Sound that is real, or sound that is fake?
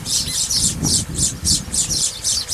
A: fake